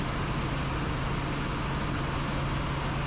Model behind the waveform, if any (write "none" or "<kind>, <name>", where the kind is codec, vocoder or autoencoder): none